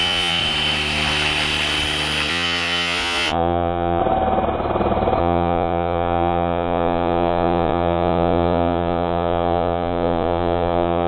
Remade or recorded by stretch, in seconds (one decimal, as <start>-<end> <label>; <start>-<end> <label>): 0.0-0.4 remade; 0.4-2.3 recorded; 2.3-4.0 remade; 4.0-5.2 recorded; 5.2-11.1 remade